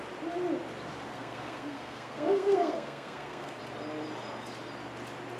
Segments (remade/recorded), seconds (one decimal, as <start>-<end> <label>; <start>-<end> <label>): 0.0-1.1 recorded; 1.1-3.6 remade; 3.6-5.4 recorded